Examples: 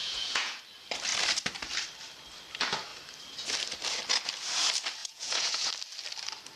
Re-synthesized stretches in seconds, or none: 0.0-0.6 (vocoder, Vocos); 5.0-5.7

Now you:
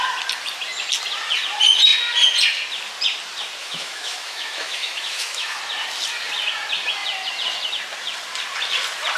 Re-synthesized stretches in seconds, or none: 3.6-5.6 (autoencoder, DAC-VAE)

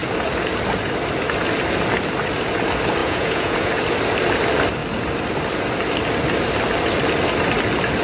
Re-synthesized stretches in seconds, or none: 3.0-3.7 (vocoder, Vocos)

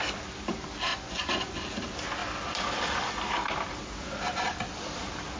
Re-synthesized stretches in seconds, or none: 0.9-1.6 (vocoder, Vocos)